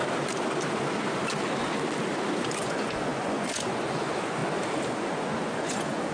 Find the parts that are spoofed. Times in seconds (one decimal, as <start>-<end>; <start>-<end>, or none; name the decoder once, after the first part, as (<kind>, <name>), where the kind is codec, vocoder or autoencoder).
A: 2.6-4.4 (vocoder, Vocos); 4.9-6.1